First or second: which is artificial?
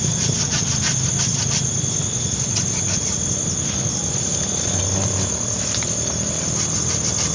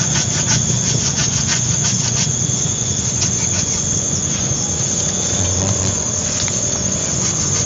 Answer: second